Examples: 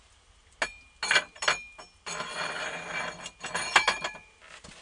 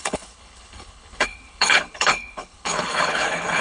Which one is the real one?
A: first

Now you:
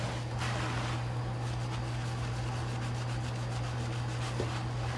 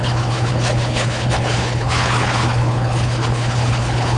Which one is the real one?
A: first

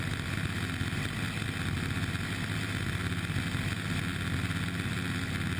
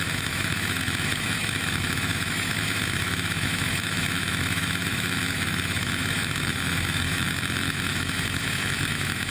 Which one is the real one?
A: first